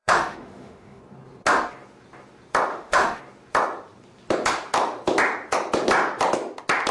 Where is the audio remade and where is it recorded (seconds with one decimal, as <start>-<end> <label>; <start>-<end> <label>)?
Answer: 0.0-1.0 remade; 1.0-2.7 recorded; 2.7-3.2 remade; 3.2-6.9 recorded